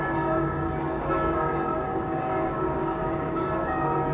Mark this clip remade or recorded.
remade